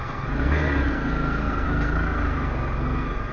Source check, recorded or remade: remade